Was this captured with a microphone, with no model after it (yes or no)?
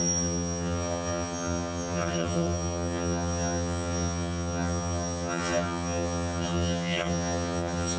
no